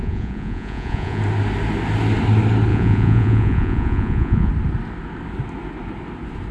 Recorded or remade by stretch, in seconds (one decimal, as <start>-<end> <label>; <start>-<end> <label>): 0.0-1.2 remade; 1.2-2.7 recorded; 2.7-4.5 remade; 4.5-6.5 recorded

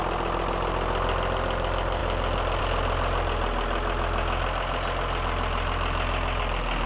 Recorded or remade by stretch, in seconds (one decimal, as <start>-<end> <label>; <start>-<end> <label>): 0.0-6.9 recorded

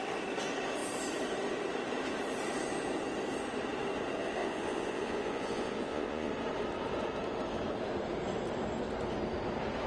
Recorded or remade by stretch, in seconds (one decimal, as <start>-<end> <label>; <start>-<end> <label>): 0.0-4.4 recorded; 4.4-6.3 remade; 6.3-9.9 recorded

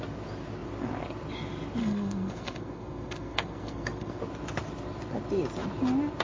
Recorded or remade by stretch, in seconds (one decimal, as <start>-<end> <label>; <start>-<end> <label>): 0.0-1.8 recorded; 1.8-4.2 remade; 4.2-6.2 recorded

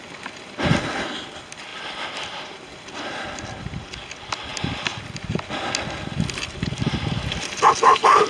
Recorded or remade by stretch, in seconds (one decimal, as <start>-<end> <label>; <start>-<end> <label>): 0.0-8.3 recorded

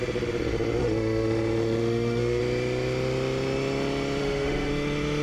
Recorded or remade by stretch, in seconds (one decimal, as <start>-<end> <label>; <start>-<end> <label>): 0.0-0.8 recorded; 0.8-2.4 remade; 2.4-4.2 recorded; 4.2-4.7 remade; 4.7-5.2 recorded

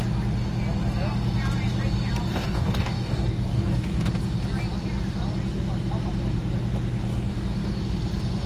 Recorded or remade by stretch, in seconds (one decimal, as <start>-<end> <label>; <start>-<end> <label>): 0.0-2.3 recorded; 2.3-4.1 remade; 4.1-7.1 recorded; 7.1-7.8 remade; 7.8-8.5 recorded

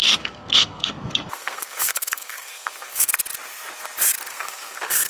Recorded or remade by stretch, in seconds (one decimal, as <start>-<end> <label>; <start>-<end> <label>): 0.0-3.1 remade; 3.1-4.3 recorded; 4.3-5.1 remade